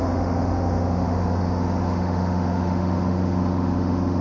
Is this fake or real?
fake